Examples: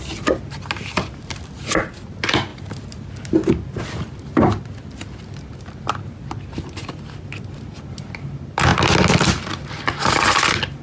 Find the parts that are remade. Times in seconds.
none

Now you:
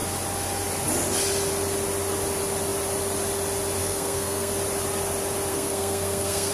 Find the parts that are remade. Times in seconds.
3.8-4.5; 5.5-6.5

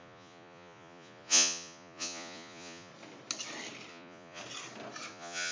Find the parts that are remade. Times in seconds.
0.0-2.9; 3.9-4.4; 5.1-5.5

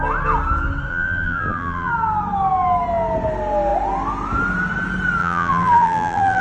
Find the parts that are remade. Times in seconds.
0.9-1.9; 5.2-6.4

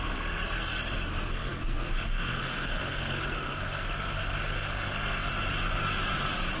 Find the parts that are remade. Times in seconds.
0.0-5.3

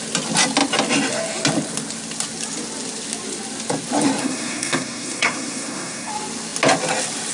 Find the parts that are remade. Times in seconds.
4.2-6.1

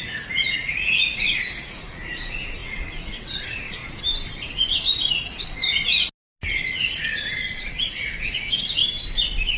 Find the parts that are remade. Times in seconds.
0.0-3.8; 8.0-8.8

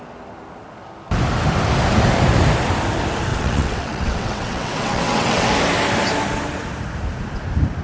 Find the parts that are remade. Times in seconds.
3.3-5.5